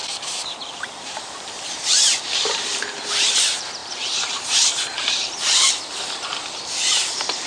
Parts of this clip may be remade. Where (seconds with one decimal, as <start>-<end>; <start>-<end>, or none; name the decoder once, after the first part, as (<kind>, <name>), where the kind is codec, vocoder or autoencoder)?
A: 0.0-7.5 (vocoder, BigVGAN v2)